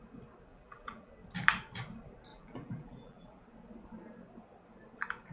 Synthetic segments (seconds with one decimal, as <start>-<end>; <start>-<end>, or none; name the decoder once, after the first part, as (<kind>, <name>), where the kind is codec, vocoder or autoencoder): 0.5-1.1 (vocoder, BigVGAN v2); 2.3-3.4